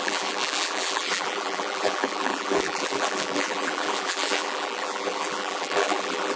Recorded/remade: remade